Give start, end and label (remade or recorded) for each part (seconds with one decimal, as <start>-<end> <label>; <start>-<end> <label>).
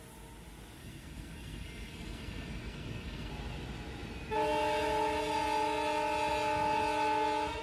0.0-0.8 recorded; 0.8-3.3 remade; 3.3-7.6 recorded